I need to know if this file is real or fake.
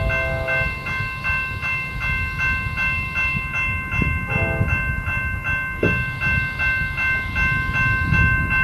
real